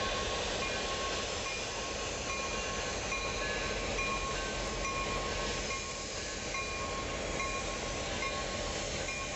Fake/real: real